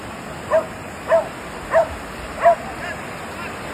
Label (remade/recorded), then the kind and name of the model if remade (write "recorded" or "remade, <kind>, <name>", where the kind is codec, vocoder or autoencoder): recorded